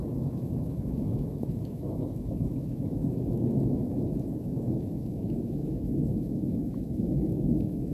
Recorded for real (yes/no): no